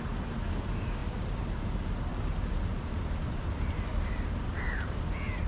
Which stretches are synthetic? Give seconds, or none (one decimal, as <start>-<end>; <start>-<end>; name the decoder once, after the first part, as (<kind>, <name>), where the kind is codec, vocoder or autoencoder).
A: 1.0-1.6 (vocoder, BigVGAN v2); 2.1-5.0